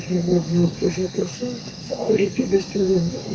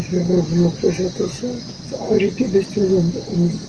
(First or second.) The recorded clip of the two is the second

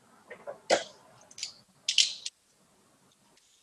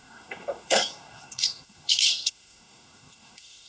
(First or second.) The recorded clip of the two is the first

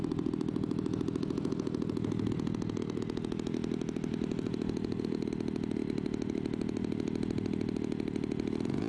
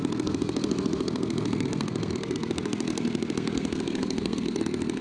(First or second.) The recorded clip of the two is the first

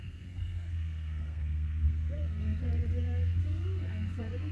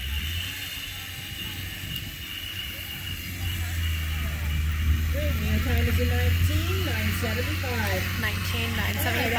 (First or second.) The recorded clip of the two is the second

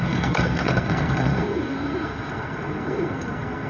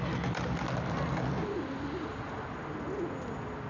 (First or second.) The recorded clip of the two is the second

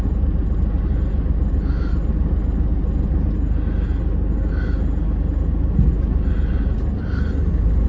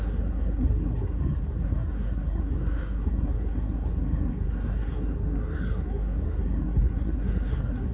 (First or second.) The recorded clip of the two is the first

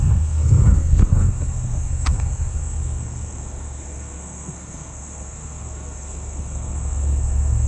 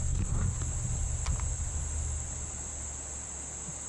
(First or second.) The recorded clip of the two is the second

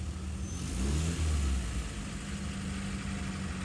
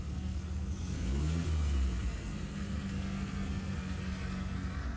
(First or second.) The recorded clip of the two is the first